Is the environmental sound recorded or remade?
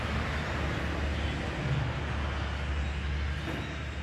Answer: recorded